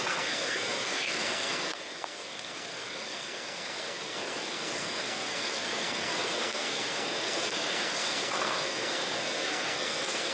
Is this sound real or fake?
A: fake